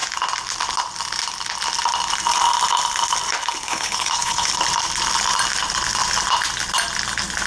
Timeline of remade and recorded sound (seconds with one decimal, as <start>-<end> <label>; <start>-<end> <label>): 0.0-3.6 recorded; 3.6-4.5 remade; 4.5-7.5 recorded